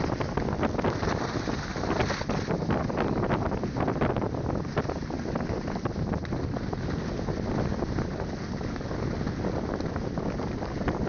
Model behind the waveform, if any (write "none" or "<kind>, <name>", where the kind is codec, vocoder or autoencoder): none